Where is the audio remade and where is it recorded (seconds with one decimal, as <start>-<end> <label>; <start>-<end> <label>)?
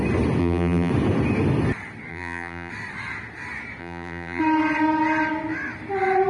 0.0-0.4 recorded; 0.4-0.9 remade; 0.9-2.1 recorded; 2.1-2.7 remade; 2.7-3.8 recorded; 3.8-4.4 remade; 4.4-6.3 recorded